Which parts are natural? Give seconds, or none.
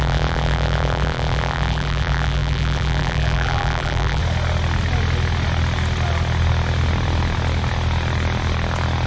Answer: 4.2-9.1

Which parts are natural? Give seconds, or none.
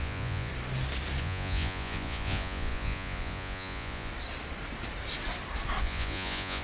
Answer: 0.5-1.2; 4.1-5.8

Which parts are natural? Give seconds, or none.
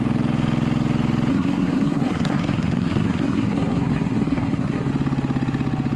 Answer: 0.0-1.3; 4.9-6.0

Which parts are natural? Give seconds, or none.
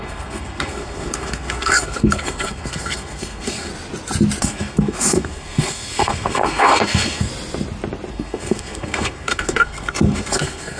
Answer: 3.7-4.4; 7.3-8.1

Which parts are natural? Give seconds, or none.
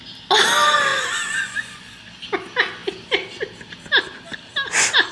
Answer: 0.0-0.9; 2.0-5.1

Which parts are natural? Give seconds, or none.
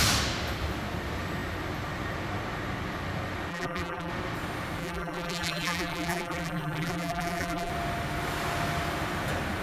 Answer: 0.0-3.5; 4.1-4.8; 7.7-9.6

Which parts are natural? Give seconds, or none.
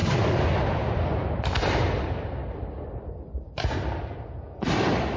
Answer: 0.0-5.2